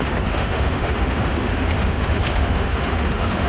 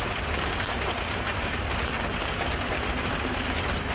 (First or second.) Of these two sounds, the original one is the second